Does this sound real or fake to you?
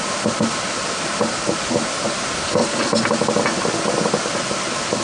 real